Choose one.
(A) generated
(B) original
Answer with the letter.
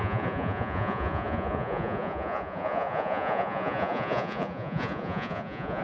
A